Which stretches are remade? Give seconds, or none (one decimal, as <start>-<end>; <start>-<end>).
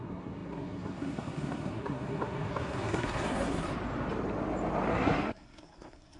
0.0-3.7; 4.9-6.2